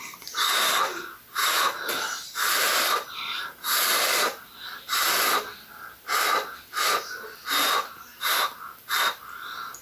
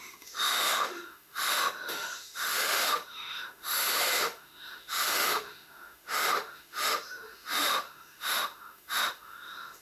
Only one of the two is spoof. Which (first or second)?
second